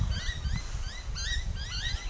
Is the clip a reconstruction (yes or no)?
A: no